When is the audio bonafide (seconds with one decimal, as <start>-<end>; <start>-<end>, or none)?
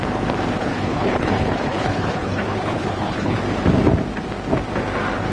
0.0-0.6; 3.4-5.3